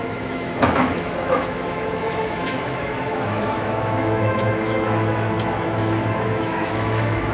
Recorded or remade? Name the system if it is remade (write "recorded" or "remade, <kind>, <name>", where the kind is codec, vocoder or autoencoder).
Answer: remade, autoencoder, DAC-VAE